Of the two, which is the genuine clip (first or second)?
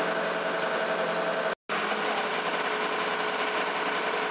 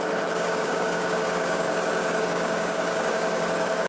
first